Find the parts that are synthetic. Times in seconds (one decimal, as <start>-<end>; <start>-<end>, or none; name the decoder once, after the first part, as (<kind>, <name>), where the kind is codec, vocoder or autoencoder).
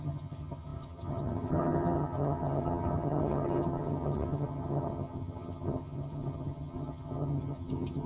0.0-8.1 (vocoder, HiFi-GAN)